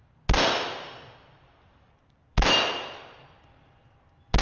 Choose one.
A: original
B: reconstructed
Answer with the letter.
A